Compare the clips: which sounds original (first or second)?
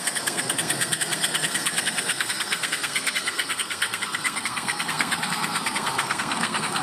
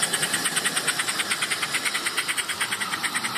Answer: second